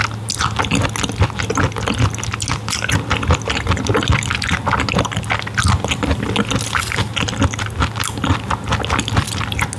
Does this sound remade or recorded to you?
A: recorded